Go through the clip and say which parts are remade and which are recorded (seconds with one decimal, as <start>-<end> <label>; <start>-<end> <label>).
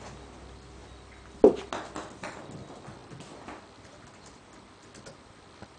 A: 0.0-5.8 recorded